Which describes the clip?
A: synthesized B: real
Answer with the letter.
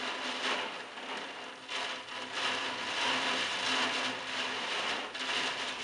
B